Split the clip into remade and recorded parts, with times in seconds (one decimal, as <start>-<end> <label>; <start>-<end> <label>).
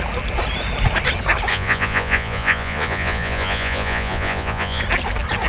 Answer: 0.0-1.5 recorded; 1.5-4.8 remade; 4.8-5.5 recorded